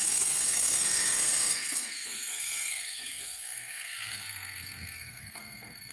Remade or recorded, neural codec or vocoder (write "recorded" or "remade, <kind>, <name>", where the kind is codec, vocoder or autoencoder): remade, codec, SNAC